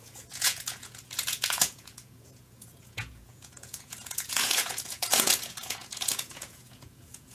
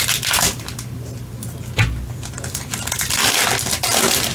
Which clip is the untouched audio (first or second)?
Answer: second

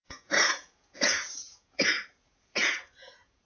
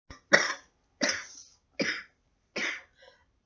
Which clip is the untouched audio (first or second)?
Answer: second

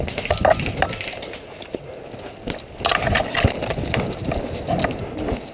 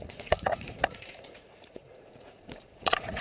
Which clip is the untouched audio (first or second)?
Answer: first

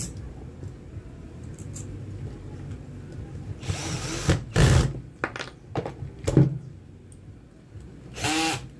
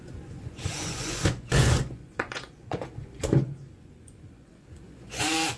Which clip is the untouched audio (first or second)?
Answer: first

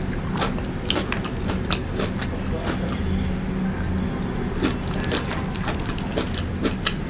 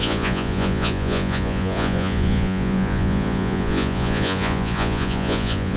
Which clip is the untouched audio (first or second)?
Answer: first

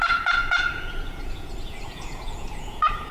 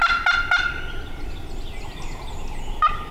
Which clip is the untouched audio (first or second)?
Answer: second